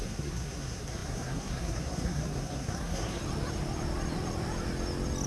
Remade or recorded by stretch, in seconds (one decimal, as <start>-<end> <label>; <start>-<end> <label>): 0.0-3.2 remade; 3.2-5.3 recorded